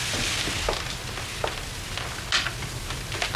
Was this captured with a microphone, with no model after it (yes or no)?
yes